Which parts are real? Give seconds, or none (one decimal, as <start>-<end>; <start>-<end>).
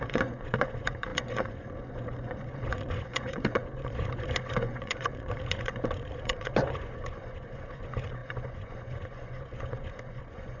none